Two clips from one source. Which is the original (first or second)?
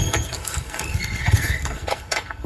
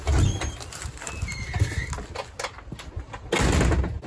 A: second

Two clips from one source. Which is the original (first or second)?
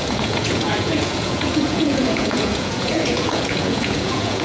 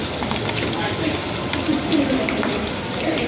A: second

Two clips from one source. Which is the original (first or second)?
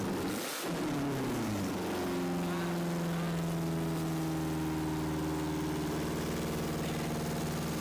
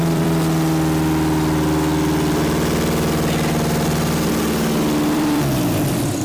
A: first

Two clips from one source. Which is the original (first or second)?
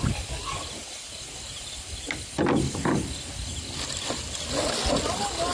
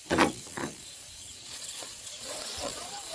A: first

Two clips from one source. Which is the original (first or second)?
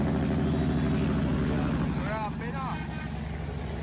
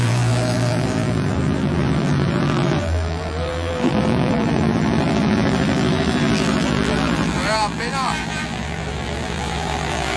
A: first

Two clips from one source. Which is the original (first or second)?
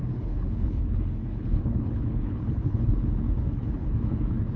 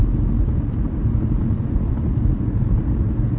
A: second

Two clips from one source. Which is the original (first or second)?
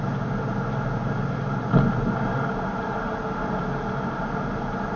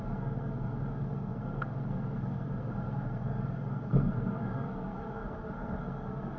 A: first